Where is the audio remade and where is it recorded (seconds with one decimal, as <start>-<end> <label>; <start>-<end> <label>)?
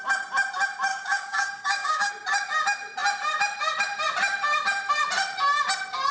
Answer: 0.0-0.9 recorded; 0.9-2.1 remade; 2.1-6.1 recorded